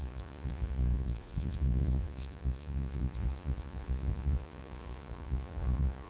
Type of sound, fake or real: fake